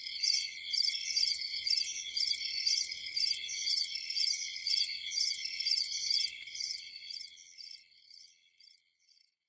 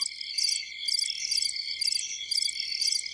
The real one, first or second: second